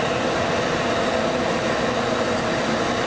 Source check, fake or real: real